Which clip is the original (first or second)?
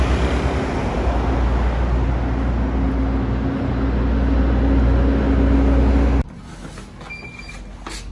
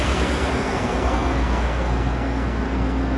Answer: first